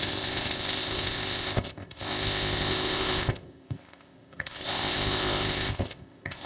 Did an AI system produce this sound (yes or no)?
yes